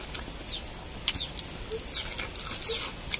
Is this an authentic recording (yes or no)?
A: yes